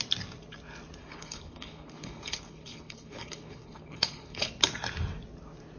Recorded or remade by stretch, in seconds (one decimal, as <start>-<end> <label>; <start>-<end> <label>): 0.0-1.0 recorded; 1.0-4.5 remade; 4.5-5.8 recorded